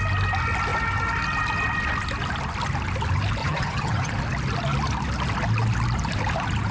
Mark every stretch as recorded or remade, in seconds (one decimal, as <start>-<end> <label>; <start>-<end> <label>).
0.0-3.4 recorded; 3.4-4.1 remade; 4.1-6.7 recorded